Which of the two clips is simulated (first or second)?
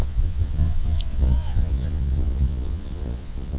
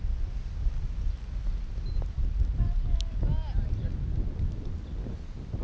first